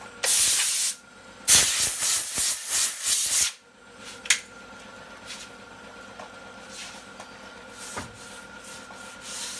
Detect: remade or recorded recorded